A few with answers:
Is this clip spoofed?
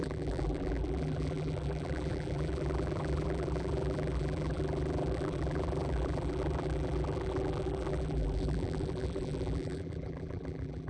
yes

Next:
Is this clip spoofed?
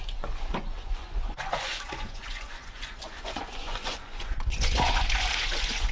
yes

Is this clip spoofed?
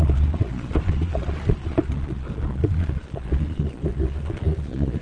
yes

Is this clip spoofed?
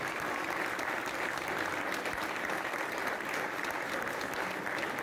no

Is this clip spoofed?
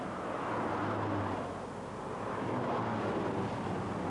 no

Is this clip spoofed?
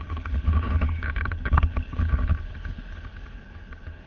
yes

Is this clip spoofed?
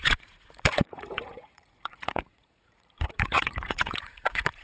yes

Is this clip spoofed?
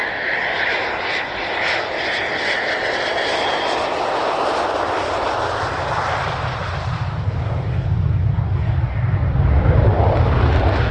no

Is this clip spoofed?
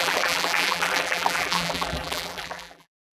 yes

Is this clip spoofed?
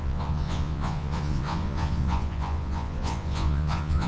yes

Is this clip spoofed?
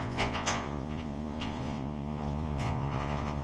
yes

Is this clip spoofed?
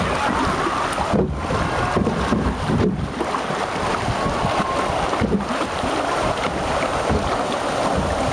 no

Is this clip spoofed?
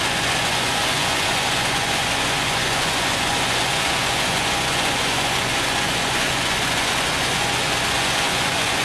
yes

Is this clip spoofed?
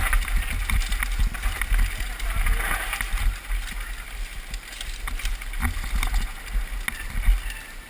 no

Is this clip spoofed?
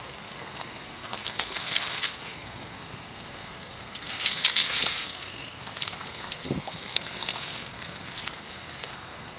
yes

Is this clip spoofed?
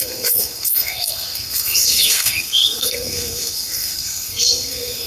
yes